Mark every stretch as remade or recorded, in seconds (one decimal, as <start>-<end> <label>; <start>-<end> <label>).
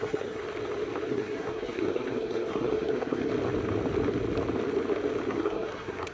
0.0-0.4 remade; 0.4-1.1 recorded; 1.1-3.3 remade; 3.3-5.3 recorded; 5.3-6.1 remade